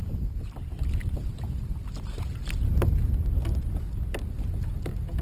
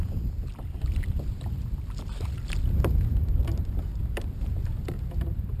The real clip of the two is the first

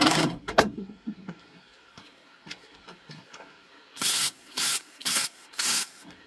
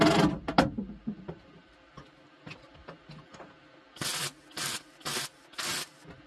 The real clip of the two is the second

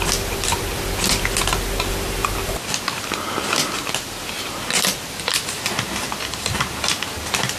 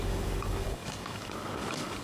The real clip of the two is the first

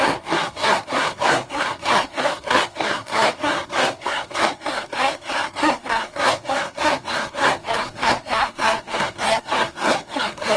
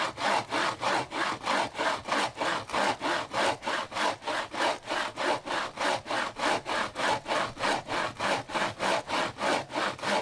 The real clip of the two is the second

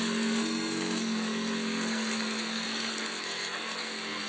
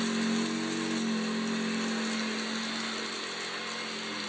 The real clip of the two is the second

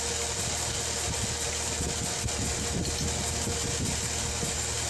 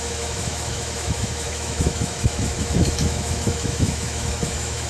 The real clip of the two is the first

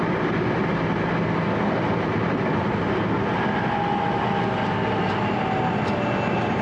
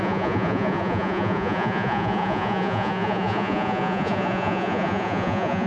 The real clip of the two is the first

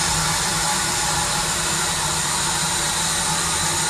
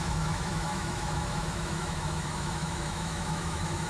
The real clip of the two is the first